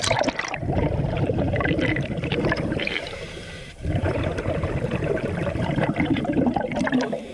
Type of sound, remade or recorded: remade